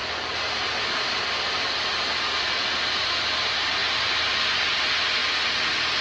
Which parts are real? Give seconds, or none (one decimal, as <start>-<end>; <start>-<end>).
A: 3.1-3.8; 4.5-6.0